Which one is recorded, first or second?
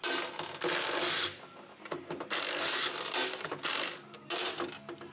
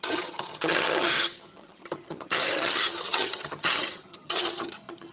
first